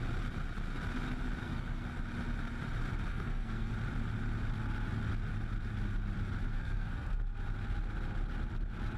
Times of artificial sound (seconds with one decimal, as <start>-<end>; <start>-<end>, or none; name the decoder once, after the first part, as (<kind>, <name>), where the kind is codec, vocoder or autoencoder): 1.4-1.9 (codec, SNAC); 3.1-3.7; 6.5-7.2